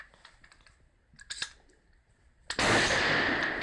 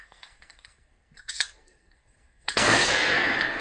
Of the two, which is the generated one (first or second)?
second